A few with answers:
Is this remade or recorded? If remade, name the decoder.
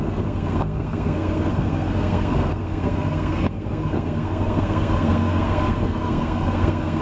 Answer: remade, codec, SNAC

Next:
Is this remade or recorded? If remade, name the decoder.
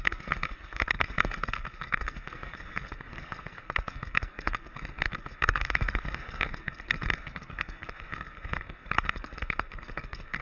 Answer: remade, codec, SNAC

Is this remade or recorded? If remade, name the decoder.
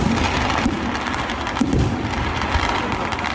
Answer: recorded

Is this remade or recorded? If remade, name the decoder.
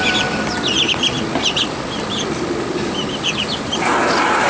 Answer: recorded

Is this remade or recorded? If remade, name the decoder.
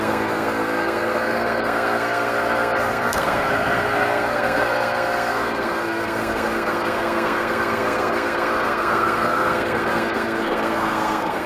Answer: remade, codec, SNAC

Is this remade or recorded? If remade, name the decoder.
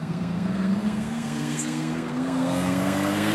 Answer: remade, codec, SNAC